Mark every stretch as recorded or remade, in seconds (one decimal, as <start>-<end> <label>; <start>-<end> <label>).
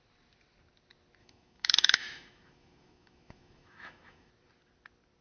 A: 0.0-1.2 recorded; 1.2-4.3 remade; 4.3-5.2 recorded